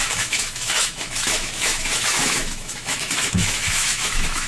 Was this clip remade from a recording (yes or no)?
yes